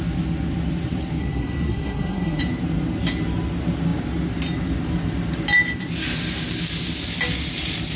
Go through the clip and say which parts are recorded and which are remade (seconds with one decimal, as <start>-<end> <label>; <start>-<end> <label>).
0.0-1.2 recorded; 1.2-2.4 remade; 2.4-8.0 recorded